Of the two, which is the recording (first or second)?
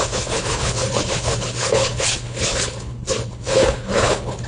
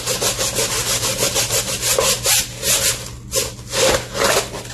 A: second